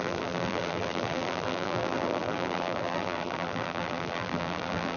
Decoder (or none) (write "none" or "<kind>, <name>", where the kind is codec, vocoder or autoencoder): vocoder, BigVGAN v2